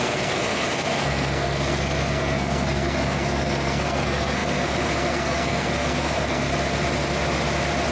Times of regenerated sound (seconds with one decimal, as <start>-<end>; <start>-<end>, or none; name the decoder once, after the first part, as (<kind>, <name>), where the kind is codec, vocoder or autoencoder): 0.0-6.5 (codec, SNAC)

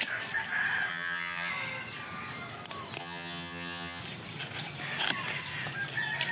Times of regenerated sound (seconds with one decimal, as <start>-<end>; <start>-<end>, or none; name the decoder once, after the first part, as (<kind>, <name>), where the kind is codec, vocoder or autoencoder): 0.9-1.5 (vocoder, HiFi-GAN); 3.0-4.0

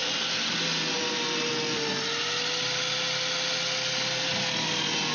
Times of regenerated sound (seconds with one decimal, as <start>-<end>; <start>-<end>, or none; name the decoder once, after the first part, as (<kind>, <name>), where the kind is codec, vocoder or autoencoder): none

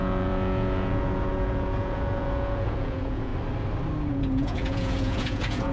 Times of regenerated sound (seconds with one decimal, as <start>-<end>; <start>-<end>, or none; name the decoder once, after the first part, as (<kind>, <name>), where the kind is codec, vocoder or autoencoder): 0.0-3.3 (vocoder, Vocos); 4.1-5.7

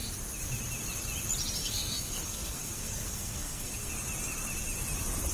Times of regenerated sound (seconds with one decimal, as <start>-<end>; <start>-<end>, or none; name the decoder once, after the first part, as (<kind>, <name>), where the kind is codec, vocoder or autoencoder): 1.6-3.9 (codec, SNAC)

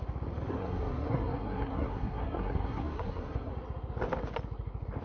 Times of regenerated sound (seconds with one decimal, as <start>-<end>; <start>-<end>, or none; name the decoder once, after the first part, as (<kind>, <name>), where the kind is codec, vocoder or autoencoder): 0.5-3.5 (codec, SNAC)

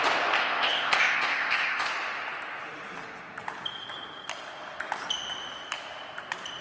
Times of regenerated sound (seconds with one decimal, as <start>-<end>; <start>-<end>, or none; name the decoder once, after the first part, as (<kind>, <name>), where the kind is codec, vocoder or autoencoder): 0.4-1.9 (codec, ZipCodec)

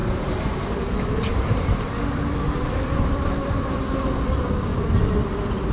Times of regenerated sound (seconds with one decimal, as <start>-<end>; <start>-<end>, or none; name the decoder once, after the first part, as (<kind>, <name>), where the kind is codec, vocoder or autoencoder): 0.0-0.9 (vocoder, BigVGAN v2); 1.3-1.9; 3.4-4.2